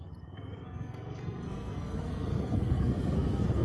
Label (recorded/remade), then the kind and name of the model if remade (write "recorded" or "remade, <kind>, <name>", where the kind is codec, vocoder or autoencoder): remade, codec, SNAC